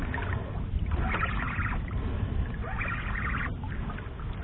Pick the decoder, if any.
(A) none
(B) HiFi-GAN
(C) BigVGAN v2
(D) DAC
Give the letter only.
A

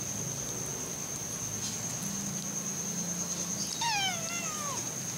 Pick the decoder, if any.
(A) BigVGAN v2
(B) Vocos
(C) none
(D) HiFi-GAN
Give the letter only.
C